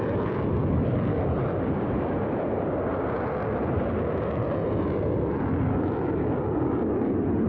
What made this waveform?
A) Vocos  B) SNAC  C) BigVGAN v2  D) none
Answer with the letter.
D